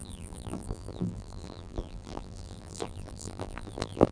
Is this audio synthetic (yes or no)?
yes